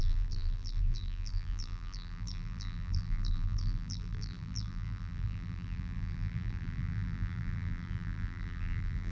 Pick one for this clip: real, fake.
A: fake